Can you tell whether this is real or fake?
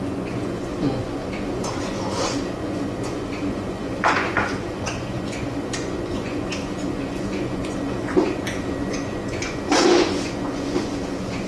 fake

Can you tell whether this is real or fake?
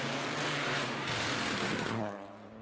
real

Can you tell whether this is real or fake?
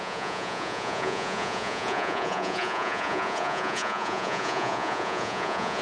fake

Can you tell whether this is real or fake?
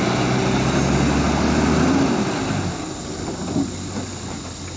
real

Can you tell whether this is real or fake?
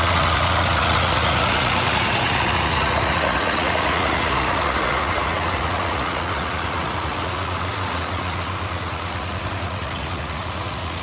fake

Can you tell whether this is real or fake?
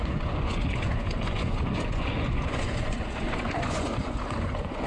fake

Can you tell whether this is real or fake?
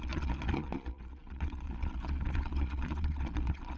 fake